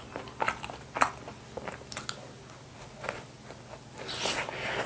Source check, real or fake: real